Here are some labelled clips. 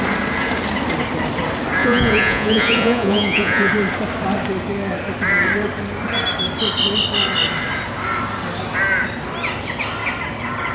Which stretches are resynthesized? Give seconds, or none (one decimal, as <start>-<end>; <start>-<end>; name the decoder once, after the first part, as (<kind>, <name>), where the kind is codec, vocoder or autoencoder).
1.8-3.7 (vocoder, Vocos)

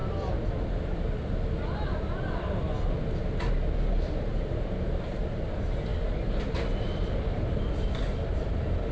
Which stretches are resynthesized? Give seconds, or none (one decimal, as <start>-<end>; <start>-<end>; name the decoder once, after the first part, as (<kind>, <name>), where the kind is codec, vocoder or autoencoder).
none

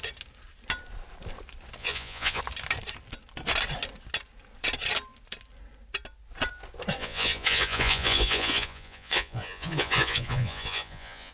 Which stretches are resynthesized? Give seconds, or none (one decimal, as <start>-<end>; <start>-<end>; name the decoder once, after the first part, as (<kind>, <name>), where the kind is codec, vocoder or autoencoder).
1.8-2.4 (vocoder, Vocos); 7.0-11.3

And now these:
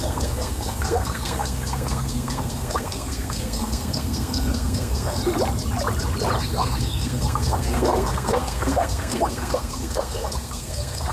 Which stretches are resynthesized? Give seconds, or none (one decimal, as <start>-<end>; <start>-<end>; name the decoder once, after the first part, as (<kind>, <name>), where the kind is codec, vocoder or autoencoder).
0.0-5.2 (codec, SNAC); 6.4-11.1

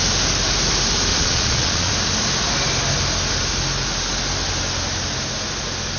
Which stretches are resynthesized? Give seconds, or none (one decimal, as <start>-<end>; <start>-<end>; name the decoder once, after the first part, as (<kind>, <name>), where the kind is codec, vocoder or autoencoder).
1.1-1.9 (vocoder, Vocos)

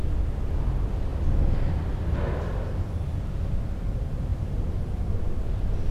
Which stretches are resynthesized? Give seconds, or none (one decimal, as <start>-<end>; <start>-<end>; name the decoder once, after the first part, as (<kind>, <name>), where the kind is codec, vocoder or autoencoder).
none

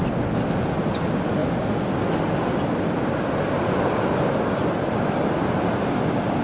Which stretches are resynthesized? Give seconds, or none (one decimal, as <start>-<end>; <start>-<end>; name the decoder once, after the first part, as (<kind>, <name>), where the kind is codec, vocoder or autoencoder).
none

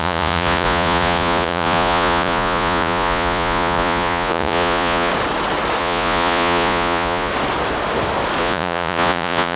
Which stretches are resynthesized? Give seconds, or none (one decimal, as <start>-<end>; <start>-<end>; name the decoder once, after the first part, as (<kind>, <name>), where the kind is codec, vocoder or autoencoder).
0.0-5.1 (vocoder, Vocos); 5.8-7.3; 8.4-9.6